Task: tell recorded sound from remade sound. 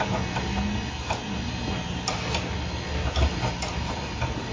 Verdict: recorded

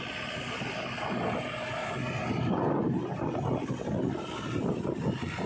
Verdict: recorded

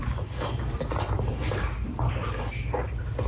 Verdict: recorded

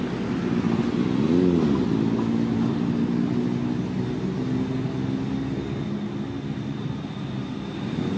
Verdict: recorded